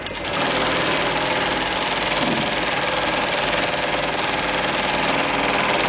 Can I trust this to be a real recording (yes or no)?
yes